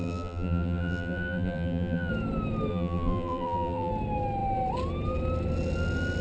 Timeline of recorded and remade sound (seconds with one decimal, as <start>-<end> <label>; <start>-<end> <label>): 0.0-2.1 remade; 2.1-2.7 recorded; 2.7-3.9 remade; 3.9-6.2 recorded